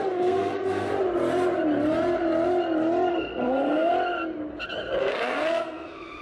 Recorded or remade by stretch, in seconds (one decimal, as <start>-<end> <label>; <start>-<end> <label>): 0.0-0.9 remade; 0.9-3.1 recorded; 3.1-3.9 remade; 3.9-5.0 recorded; 5.0-6.2 remade